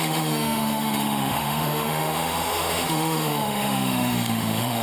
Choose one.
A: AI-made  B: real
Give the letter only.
A